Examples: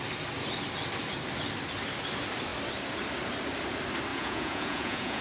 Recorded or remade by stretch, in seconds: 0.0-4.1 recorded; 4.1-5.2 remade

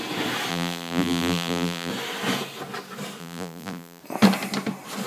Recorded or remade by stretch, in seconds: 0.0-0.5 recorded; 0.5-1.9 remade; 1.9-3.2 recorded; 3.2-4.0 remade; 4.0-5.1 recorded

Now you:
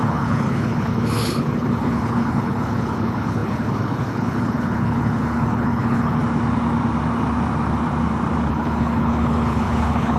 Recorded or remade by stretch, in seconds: 0.0-6.2 remade; 6.2-8.5 recorded; 8.5-10.2 remade

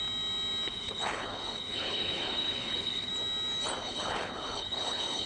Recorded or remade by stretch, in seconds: 0.0-0.7 recorded; 0.7-3.1 remade; 3.1-3.8 recorded; 3.8-5.3 remade

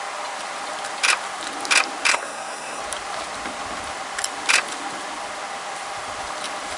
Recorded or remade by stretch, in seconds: 0.0-2.1 recorded; 2.1-2.8 remade; 2.8-6.8 recorded

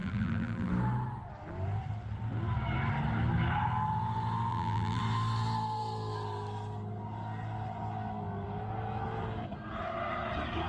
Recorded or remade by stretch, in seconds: 0.0-0.7 remade; 0.7-4.5 recorded; 4.5-5.0 remade; 5.0-10.7 recorded

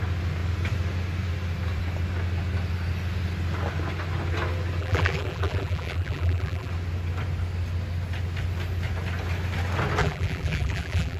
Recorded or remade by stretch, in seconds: 0.0-4.8 recorded; 4.8-6.7 remade; 6.7-10.0 recorded; 10.0-11.2 remade